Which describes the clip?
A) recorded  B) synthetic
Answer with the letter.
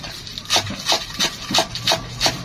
A